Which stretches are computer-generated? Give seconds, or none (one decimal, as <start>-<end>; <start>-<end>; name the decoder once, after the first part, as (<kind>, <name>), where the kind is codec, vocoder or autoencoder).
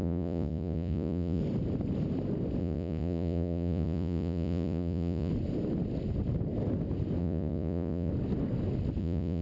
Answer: 0.0-1.4 (vocoder, Vocos); 2.6-5.3; 7.2-8.1; 9.0-9.4